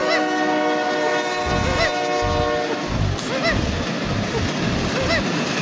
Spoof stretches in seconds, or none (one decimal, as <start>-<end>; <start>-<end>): none